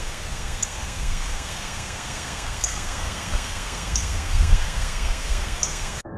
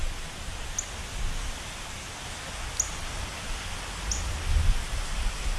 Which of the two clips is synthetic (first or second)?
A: first